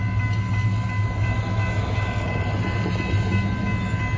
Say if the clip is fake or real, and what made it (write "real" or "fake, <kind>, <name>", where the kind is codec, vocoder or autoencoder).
real